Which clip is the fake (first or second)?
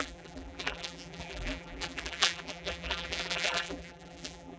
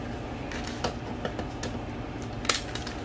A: first